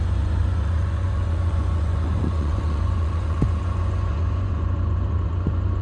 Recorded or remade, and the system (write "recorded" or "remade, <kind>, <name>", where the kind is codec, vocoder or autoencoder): remade, vocoder, Vocos